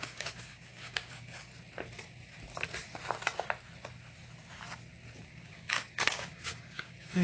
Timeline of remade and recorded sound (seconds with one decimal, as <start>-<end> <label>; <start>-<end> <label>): 0.0-1.5 remade; 1.5-5.3 recorded; 5.3-7.2 remade